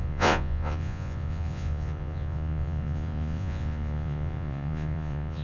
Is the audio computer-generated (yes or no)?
yes